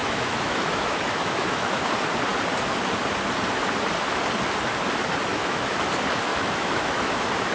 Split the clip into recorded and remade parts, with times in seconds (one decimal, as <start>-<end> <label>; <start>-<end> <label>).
0.0-1.8 remade; 1.8-5.3 recorded; 5.3-5.8 remade; 5.8-6.3 recorded; 6.3-7.5 remade